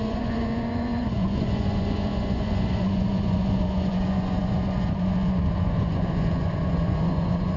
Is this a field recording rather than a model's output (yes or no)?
no